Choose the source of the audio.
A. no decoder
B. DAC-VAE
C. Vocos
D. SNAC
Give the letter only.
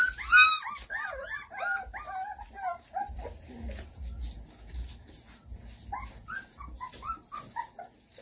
A